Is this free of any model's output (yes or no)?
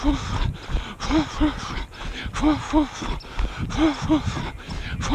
yes